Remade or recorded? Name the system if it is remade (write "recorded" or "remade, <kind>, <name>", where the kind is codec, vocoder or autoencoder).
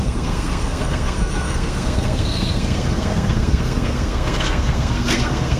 remade, codec, SNAC